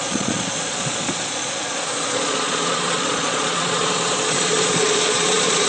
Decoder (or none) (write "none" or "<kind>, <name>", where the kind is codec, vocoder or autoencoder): vocoder, Vocos